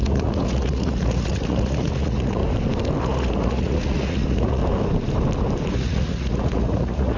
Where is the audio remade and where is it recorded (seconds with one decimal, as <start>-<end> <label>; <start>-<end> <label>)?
0.0-2.4 remade; 2.4-3.0 recorded; 3.0-4.6 remade; 4.6-5.7 recorded; 5.7-7.2 remade